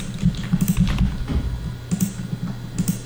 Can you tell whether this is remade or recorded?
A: recorded